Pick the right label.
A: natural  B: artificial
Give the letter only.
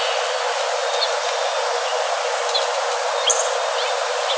A